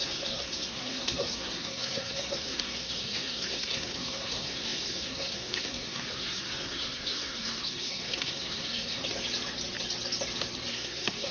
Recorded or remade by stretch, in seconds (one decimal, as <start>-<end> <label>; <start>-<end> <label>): 0.0-9.0 remade; 9.0-10.7 recorded; 10.7-11.3 remade